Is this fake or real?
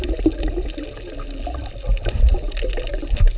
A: real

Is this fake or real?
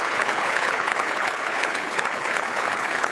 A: fake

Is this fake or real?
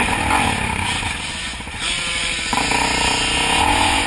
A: fake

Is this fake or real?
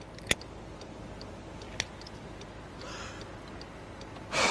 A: real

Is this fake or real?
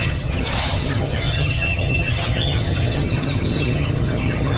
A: fake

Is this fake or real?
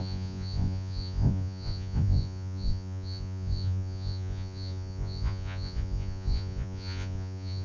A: fake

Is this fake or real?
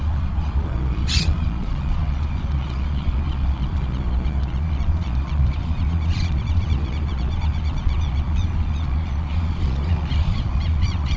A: fake